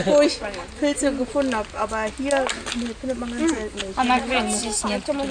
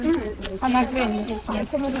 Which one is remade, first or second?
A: second